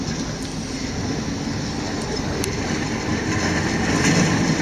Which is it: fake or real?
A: real